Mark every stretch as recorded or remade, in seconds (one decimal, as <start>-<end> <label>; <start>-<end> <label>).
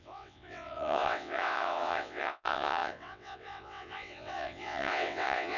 0.0-5.6 remade